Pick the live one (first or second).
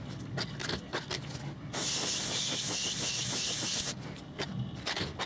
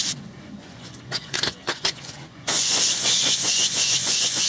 first